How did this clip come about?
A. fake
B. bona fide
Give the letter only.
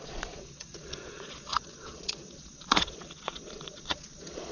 A